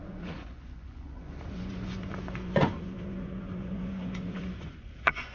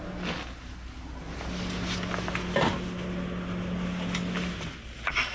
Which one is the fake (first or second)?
first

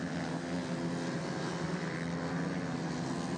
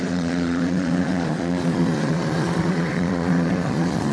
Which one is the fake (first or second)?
second